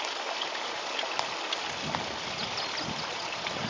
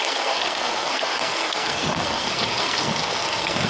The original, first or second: first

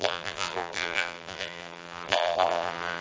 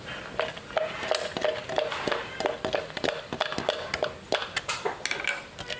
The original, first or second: second